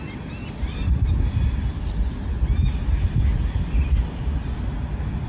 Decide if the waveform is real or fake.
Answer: real